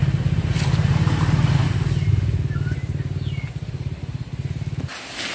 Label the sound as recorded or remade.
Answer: recorded